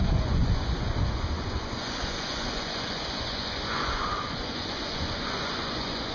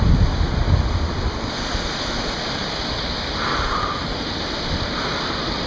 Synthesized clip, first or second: first